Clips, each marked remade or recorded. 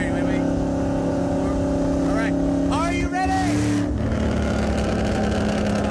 recorded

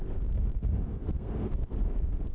remade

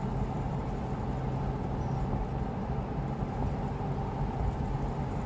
recorded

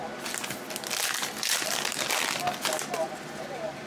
recorded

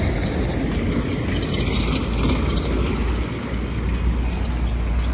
recorded